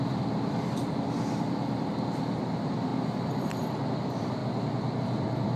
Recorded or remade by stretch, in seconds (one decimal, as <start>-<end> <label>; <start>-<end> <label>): 0.0-4.4 remade; 4.4-5.0 recorded; 5.0-5.6 remade